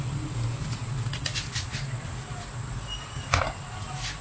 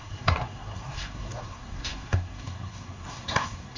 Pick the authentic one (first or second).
first